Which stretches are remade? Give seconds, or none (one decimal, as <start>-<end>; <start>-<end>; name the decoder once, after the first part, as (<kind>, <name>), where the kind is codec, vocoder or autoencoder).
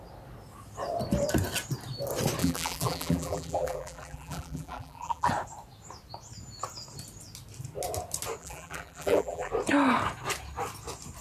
2.4-5.3 (vocoder, BigVGAN v2); 8.4-9.5